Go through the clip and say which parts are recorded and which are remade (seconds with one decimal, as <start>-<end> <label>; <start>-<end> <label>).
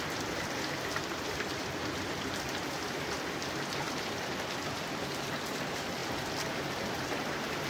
0.0-7.7 remade